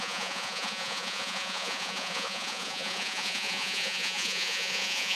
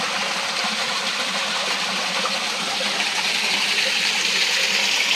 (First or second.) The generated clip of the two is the first